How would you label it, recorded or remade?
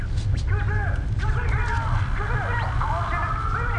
recorded